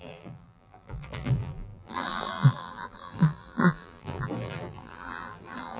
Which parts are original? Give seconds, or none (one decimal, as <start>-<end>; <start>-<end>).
none